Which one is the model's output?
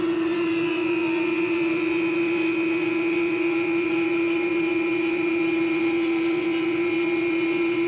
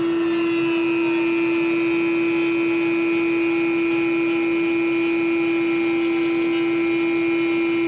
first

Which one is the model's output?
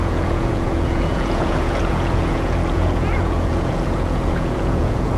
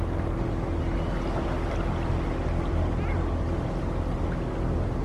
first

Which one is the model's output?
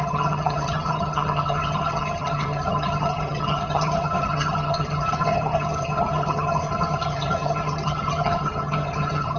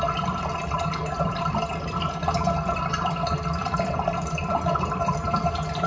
first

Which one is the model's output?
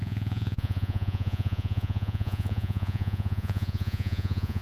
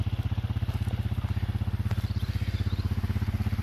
first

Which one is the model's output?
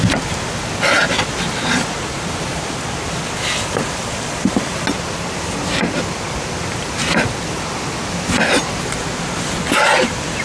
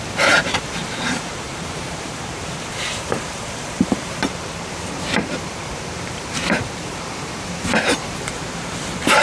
second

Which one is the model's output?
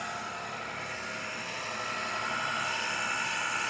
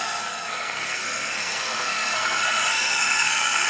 second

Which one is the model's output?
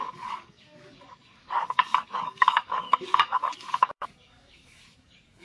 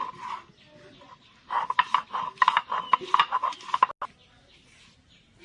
first